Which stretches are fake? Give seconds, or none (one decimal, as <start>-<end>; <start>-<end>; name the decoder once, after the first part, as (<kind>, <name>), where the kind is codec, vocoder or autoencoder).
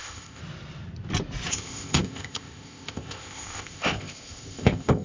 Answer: 0.0-0.4 (codec, ZipCodec); 1.5-5.0